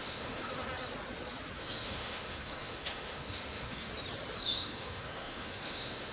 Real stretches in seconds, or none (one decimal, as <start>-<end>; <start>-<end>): 0.4-1.6; 3.9-4.4